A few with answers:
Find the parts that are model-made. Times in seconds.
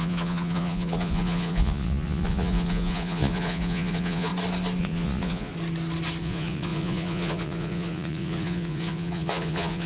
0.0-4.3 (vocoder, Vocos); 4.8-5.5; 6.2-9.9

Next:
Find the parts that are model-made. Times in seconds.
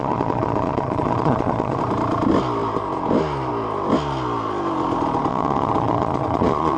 0.0-1.8 (vocoder, Vocos); 5.3-6.8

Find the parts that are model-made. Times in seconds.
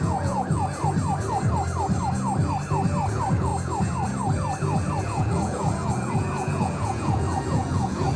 0.0-0.8 (vocoder, Vocos); 3.1-3.5; 5.0-8.2